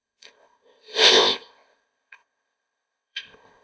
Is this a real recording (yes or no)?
no